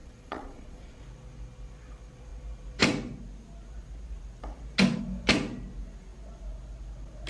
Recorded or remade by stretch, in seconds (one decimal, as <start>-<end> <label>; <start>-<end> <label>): 0.0-1.0 remade; 1.0-7.3 recorded